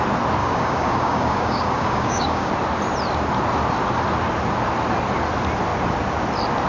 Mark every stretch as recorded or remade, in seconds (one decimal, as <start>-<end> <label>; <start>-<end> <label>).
0.0-0.4 recorded; 0.4-2.5 remade; 2.5-6.7 recorded